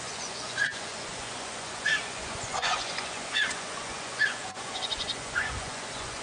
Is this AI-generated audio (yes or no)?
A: yes